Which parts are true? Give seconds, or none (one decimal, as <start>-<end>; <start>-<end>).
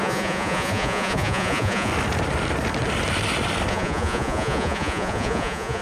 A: 1.9-3.7